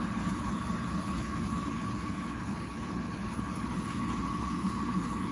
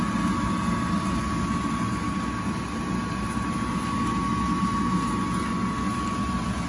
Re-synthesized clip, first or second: first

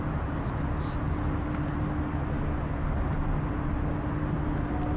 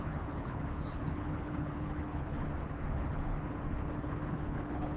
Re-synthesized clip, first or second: second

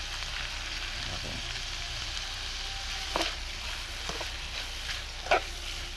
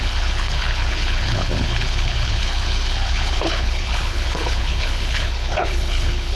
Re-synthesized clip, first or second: second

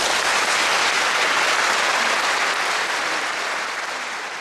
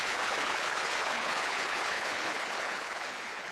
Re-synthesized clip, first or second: second